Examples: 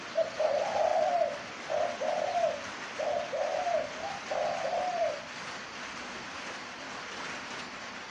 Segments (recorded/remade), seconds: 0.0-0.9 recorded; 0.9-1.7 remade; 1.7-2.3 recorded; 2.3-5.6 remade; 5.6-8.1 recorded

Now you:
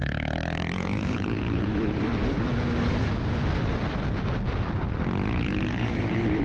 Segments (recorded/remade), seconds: 0.0-2.1 remade; 2.1-5.7 recorded; 5.7-6.4 remade

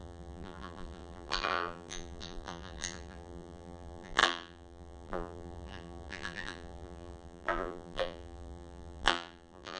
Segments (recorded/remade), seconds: 0.0-9.8 remade